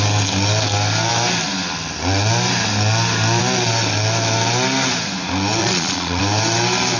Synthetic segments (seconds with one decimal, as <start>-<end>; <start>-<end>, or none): 5.6-6.2